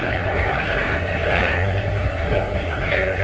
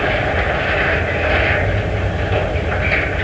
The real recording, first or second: second